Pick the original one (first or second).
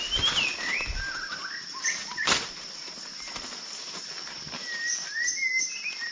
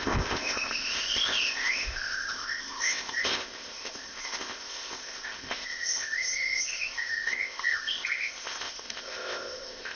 first